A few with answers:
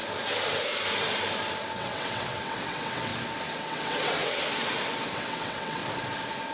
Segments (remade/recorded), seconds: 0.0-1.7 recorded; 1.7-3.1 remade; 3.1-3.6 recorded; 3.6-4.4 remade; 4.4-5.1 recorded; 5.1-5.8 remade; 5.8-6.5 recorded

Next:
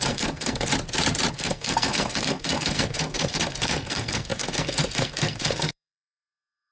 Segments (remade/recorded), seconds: 0.0-0.7 remade; 0.7-1.3 recorded; 1.3-6.7 remade